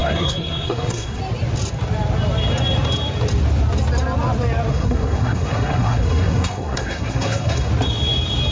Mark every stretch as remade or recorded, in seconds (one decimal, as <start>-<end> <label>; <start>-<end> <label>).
0.0-1.2 remade; 1.2-4.7 recorded; 4.7-7.7 remade; 7.7-8.5 recorded